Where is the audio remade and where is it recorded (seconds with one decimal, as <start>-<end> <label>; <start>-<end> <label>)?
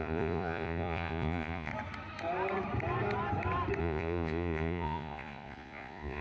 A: 0.0-1.7 remade; 1.7-3.8 recorded; 3.8-6.2 remade